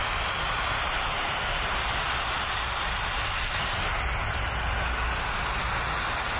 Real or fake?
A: real